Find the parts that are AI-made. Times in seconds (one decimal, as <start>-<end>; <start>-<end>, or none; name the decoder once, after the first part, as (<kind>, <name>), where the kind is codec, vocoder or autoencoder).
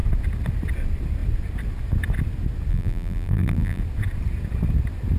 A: 2.7-3.8 (vocoder, BigVGAN v2)